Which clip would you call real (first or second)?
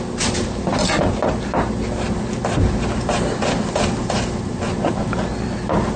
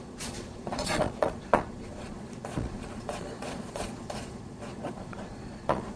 first